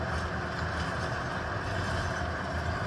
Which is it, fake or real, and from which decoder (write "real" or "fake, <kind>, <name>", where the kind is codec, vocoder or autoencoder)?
real